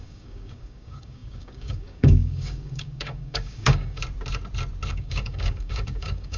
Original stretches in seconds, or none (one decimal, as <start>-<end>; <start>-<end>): 4.0-4.9